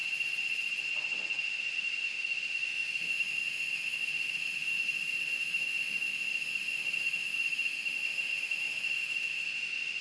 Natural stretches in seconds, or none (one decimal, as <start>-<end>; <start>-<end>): 0.0-1.4